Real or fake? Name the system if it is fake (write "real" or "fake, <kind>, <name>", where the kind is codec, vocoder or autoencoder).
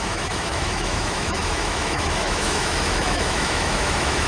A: fake, autoencoder, DAC-VAE